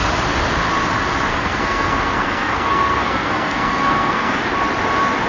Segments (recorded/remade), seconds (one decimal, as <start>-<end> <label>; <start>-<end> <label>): 0.0-1.3 recorded; 1.3-4.4 remade; 4.4-5.3 recorded